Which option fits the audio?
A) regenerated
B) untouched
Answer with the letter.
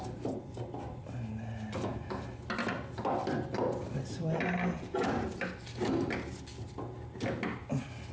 B